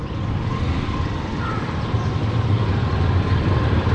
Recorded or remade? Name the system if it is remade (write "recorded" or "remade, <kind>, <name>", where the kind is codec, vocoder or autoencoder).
remade, vocoder, BigVGAN v2